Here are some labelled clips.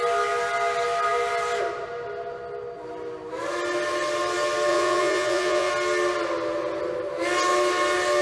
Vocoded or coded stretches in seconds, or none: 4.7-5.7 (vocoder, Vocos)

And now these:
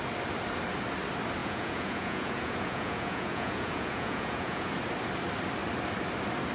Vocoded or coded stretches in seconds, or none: 1.4-4.7 (vocoder, Vocos)

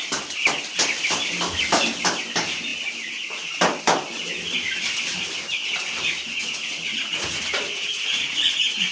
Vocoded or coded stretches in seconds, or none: 6.4-8.9 (vocoder, Vocos)